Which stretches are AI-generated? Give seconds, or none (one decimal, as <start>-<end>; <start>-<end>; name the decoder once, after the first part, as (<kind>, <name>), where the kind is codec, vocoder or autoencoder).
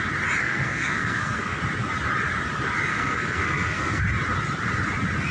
0.4-1.6 (codec, SNAC); 2.9-4.0